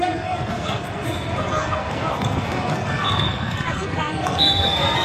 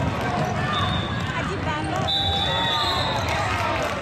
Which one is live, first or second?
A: second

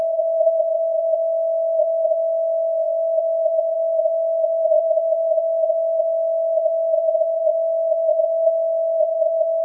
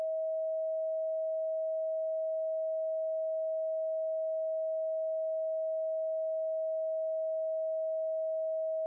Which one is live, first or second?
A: second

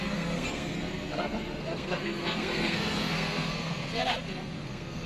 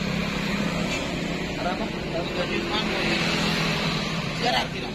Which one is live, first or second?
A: second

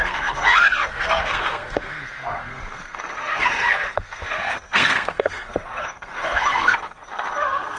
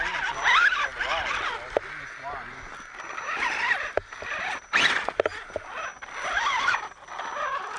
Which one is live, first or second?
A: second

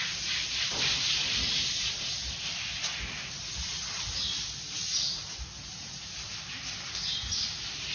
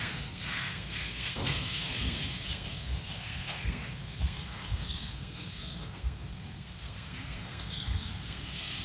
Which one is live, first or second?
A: first